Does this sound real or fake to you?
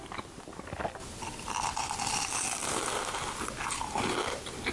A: real